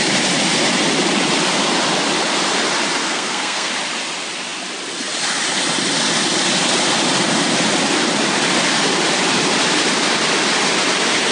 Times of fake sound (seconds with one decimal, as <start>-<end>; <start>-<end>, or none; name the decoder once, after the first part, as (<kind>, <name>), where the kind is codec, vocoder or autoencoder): 3.0-3.7 (codec, SNAC)